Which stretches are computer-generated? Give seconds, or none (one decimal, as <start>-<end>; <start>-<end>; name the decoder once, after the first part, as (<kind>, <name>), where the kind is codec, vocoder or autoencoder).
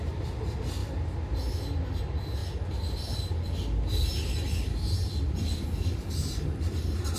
none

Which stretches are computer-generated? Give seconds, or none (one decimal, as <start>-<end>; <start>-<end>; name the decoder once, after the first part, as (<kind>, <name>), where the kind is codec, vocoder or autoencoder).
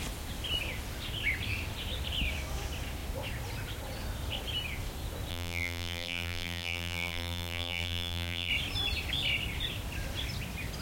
5.3-8.5 (vocoder, BigVGAN v2)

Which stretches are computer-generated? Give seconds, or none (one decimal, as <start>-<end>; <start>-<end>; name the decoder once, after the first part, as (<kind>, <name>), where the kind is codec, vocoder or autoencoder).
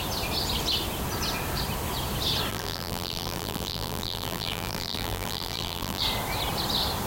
2.5-6.0 (vocoder, BigVGAN v2)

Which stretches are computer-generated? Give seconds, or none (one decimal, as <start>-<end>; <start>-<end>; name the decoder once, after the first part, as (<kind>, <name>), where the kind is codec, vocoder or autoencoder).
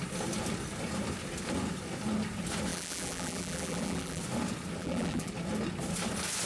2.7-4.2 (vocoder, BigVGAN v2); 4.8-5.3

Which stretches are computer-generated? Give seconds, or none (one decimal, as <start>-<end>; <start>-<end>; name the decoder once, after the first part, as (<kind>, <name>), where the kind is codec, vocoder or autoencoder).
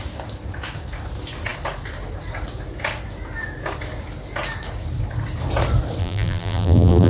6.0-7.1 (vocoder, BigVGAN v2)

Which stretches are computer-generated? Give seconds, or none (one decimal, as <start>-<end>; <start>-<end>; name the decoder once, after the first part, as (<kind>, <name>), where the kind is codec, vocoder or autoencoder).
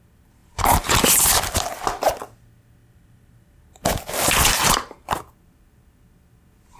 0.4-1.1 (vocoder, BigVGAN v2); 2.8-4.1; 4.5-5.2